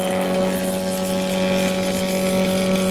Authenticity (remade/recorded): recorded